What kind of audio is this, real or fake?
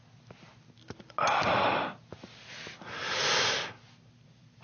real